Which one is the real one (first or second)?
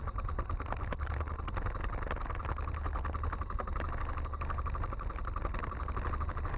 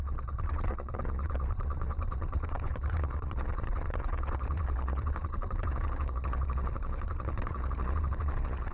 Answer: first